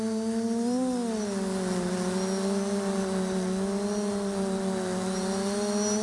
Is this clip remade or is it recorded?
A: recorded